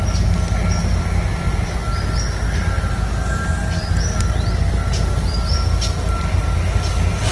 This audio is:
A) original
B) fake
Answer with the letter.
A